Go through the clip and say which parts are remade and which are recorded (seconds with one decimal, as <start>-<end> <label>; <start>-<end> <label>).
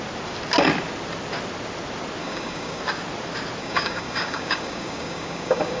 0.0-2.2 recorded; 2.2-2.8 remade; 2.8-3.6 recorded; 3.6-5.8 remade